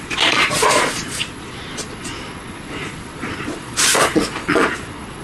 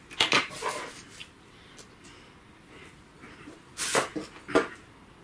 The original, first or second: second